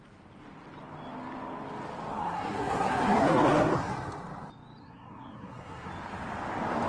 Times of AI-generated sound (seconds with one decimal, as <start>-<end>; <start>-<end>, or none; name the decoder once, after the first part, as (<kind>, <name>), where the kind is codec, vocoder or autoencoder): 2.1-3.9 (codec, SNAC); 4.8-5.9